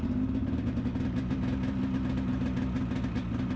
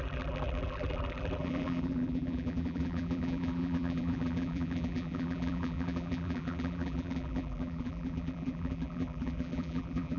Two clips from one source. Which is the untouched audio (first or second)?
first